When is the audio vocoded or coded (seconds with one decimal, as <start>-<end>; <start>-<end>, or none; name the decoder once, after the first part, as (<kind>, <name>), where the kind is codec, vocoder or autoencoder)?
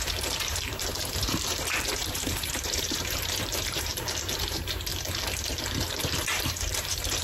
0.0-3.9 (vocoder, BigVGAN v2); 4.4-4.9; 6.0-7.2